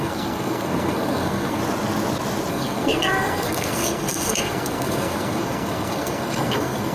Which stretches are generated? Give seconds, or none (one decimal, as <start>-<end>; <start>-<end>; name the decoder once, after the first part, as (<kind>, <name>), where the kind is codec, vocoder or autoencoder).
0.0-1.6 (codec, SNAC); 2.5-6.9